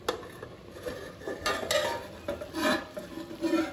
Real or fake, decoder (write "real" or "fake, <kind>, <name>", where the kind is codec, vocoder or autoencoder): real